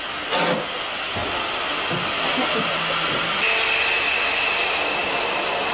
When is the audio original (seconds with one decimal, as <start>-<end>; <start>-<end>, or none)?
0.0-5.7